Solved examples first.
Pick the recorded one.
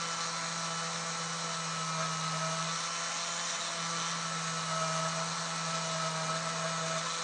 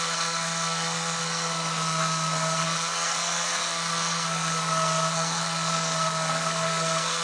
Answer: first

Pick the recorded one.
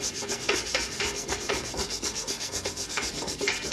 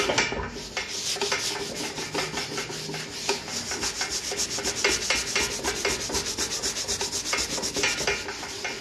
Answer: second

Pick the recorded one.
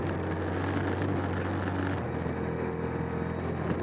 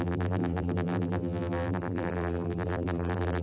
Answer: first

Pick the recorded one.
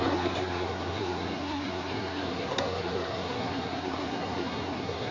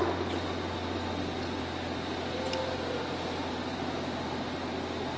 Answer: second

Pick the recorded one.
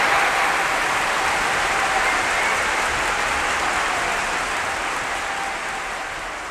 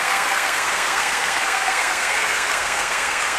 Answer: first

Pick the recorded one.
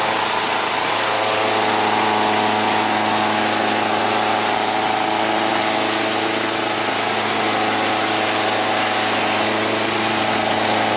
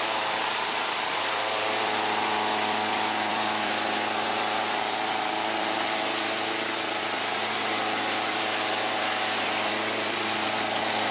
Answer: first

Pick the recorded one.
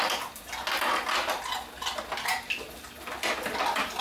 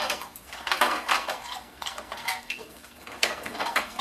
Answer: first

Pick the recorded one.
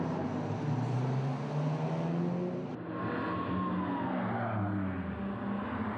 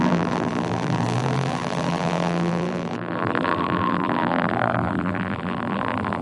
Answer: first